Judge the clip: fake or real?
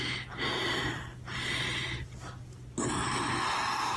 real